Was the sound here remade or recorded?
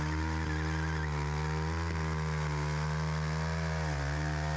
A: recorded